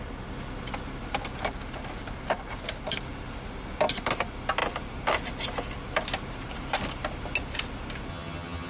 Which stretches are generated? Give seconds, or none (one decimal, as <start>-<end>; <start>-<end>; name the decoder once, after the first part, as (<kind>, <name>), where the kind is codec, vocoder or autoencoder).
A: 8.1-8.7 (vocoder, HiFi-GAN)